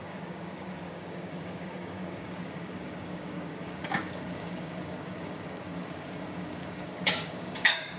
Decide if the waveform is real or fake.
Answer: fake